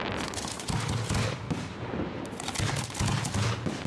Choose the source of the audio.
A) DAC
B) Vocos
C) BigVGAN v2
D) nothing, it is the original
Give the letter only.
D